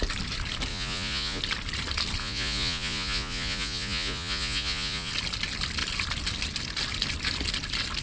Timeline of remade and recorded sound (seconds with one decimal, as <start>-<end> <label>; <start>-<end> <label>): 0.0-0.7 recorded; 0.7-1.4 remade; 1.4-2.2 recorded; 2.2-5.1 remade; 5.1-8.0 recorded